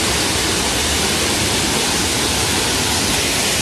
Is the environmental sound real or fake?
real